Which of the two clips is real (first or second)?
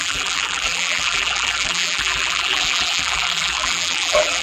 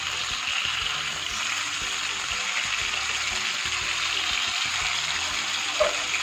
second